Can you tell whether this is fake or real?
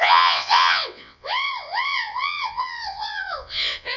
fake